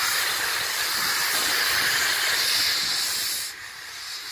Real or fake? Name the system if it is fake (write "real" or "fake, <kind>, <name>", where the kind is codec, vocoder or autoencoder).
real